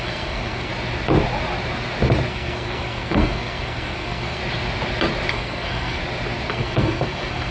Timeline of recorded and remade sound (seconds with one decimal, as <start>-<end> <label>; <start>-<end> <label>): 0.0-0.7 remade; 0.7-2.3 recorded; 2.3-4.4 remade; 4.4-5.3 recorded; 5.3-6.0 remade; 6.0-6.5 recorded; 6.5-7.5 remade